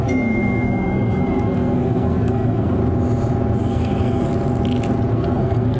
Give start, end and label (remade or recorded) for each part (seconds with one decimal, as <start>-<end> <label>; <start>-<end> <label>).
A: 0.0-2.8 remade; 2.8-3.6 recorded; 3.6-4.3 remade; 4.3-5.1 recorded; 5.1-5.8 remade